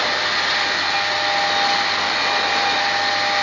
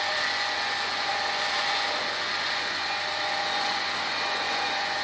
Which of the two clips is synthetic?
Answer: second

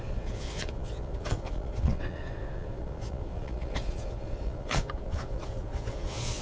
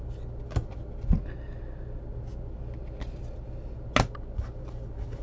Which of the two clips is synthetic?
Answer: first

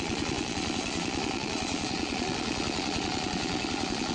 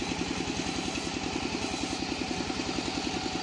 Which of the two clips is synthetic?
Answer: first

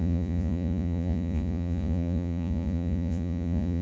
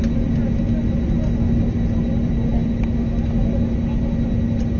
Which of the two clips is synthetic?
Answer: first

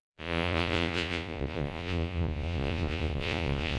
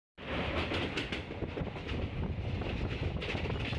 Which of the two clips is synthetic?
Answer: first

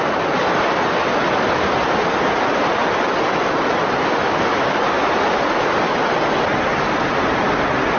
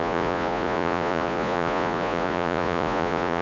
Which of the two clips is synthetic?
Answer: second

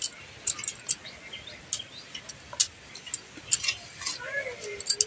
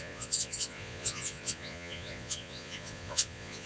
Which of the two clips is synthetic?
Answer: second